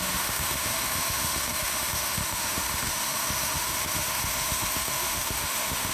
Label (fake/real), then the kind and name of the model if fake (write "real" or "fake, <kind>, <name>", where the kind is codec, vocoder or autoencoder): fake, autoencoder, DAC-VAE